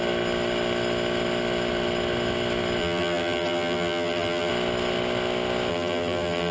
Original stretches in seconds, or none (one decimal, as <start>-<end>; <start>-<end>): 0.0-2.8; 4.5-5.7